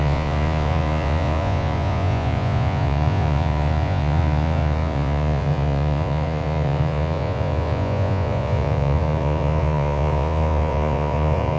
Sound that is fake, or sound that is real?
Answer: fake